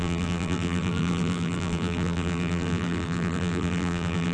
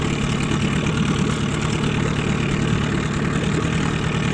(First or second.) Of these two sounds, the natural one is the second